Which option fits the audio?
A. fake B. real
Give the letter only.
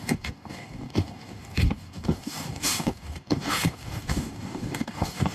A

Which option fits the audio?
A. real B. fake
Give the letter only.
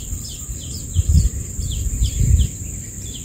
B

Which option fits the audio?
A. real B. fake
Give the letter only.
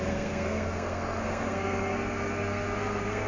B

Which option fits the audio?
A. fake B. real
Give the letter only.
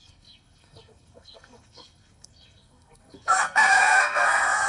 A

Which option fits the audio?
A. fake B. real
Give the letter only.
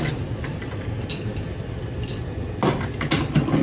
B